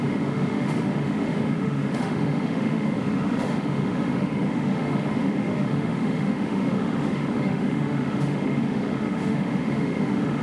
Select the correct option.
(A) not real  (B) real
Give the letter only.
A